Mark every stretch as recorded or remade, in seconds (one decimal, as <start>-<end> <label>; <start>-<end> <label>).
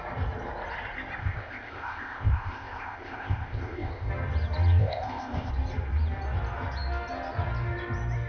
0.0-1.2 recorded; 1.2-4.1 remade; 4.1-4.8 recorded; 4.8-5.5 remade; 5.5-8.3 recorded